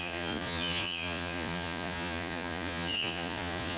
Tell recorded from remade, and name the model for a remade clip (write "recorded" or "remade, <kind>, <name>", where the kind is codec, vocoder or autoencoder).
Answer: remade, vocoder, Vocos